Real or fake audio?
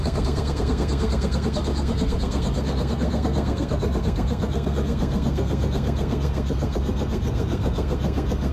fake